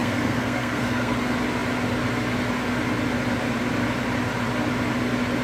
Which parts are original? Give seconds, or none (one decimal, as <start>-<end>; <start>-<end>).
1.2-5.4